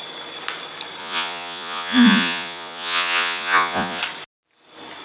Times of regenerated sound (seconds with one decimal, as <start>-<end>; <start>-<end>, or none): 1.0-4.0

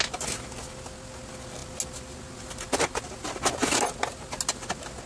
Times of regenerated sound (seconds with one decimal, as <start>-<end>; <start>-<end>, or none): none

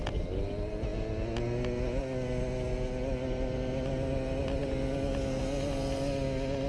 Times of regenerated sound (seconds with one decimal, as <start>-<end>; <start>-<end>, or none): none

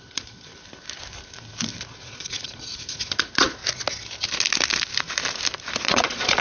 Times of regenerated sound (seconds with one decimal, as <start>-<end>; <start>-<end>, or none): 0.0-0.5; 1.9-2.7; 3.2-3.6; 5.8-6.4

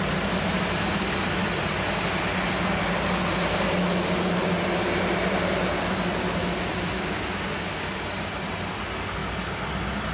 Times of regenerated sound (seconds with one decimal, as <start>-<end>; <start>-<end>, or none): none

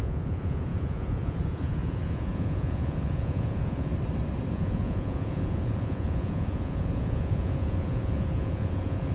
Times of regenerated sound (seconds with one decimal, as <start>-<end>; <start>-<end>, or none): 0.0-3.9; 4.5-9.1